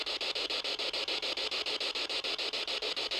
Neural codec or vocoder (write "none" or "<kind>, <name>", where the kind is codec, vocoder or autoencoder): none